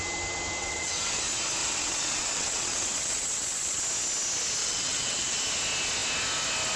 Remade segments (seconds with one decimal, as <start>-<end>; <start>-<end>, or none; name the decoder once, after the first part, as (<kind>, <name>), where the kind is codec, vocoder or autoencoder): 0.6-1.2 (vocoder, WaveNeXt); 1.6-3.8; 4.6-5.4